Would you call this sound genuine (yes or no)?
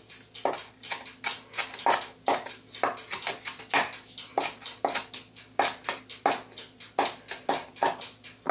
yes